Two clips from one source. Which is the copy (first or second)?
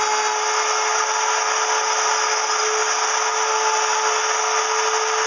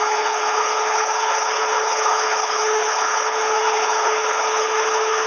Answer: second